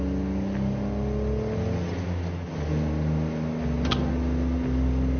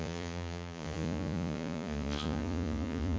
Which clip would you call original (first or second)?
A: first